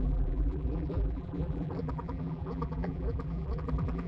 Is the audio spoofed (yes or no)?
yes